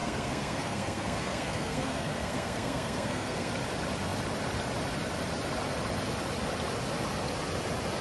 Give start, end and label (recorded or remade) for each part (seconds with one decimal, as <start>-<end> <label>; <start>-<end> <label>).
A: 0.0-3.5 remade; 3.5-8.0 recorded